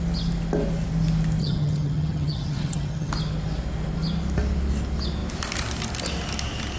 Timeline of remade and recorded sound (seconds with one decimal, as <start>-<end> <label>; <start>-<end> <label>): 0.0-1.4 recorded; 1.4-3.1 remade; 3.1-6.8 recorded